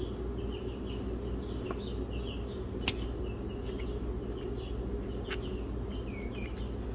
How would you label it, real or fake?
real